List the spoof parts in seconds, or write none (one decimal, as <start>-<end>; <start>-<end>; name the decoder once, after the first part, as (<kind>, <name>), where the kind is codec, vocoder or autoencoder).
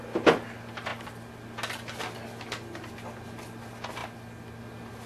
none